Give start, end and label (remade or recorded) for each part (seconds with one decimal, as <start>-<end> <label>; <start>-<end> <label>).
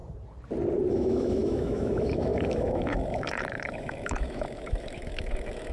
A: 0.0-0.9 recorded; 0.9-5.7 remade